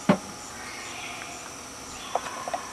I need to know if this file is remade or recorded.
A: recorded